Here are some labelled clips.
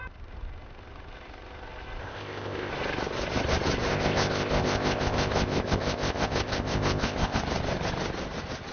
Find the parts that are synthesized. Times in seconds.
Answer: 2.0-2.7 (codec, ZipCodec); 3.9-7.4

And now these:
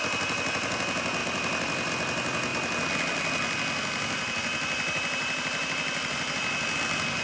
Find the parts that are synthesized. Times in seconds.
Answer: 1.2-1.9 (vocoder, BigVGAN v2)

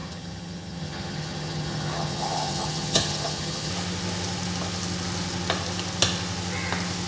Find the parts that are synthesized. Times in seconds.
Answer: 0.0-3.7 (vocoder, HiFi-GAN)

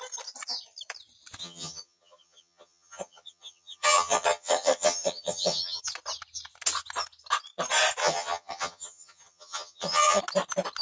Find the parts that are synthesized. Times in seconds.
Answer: 1.4-5.8 (vocoder, HiFi-GAN); 8.0-10.2